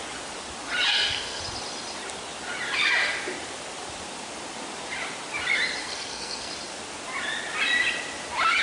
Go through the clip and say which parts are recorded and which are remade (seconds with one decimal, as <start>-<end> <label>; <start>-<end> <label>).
0.0-0.9 recorded; 0.9-1.4 remade; 1.4-5.8 recorded; 5.8-6.5 remade; 6.5-8.6 recorded